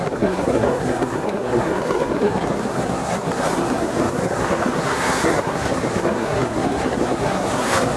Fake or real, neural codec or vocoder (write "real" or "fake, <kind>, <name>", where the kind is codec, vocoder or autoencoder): fake, codec, SNAC